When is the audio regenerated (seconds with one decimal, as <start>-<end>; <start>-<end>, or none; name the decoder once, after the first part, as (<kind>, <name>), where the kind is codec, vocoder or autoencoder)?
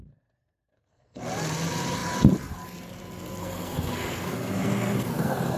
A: 0.7-1.3 (codec, SNAC); 3.4-5.6